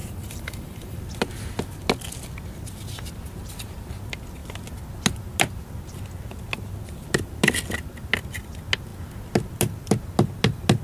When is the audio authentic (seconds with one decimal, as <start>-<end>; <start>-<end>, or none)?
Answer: 1.0-10.8